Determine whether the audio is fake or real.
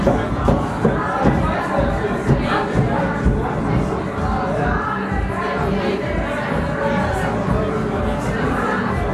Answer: real